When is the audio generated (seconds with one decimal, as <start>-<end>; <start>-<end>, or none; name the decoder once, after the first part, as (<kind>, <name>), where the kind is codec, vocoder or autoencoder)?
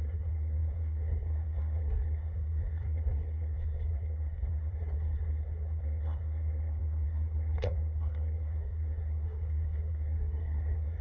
0.0-11.0 (codec, SNAC)